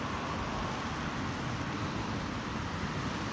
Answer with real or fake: real